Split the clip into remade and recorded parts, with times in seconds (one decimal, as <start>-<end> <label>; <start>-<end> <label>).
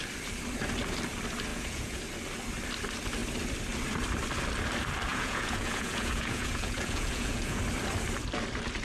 0.0-1.5 recorded; 1.5-2.0 remade; 2.0-5.1 recorded; 5.1-7.6 remade; 7.6-8.8 recorded